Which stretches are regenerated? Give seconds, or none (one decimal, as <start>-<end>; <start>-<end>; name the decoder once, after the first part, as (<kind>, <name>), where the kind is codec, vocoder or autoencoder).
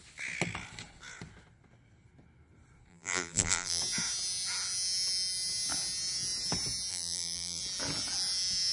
2.9-3.8 (vocoder, BigVGAN v2); 6.9-7.6